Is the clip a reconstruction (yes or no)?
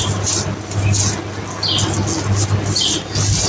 no